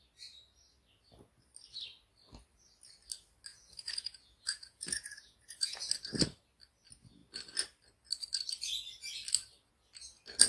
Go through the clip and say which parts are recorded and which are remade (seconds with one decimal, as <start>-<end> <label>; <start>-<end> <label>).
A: 0.0-3.5 recorded; 3.5-5.9 remade; 5.9-10.5 recorded